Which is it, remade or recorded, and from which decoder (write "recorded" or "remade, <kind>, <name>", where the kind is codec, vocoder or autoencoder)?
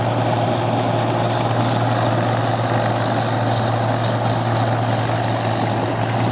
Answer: recorded